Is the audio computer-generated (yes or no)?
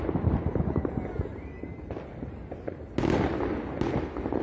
no